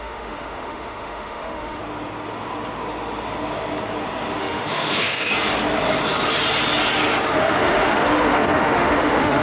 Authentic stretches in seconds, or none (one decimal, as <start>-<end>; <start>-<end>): 1.8-4.4; 5.3-7.4